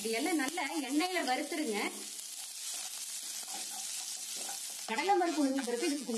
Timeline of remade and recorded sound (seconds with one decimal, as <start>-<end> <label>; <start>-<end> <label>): 0.0-0.6 recorded; 0.6-1.2 remade; 1.2-4.9 recorded; 4.9-6.2 remade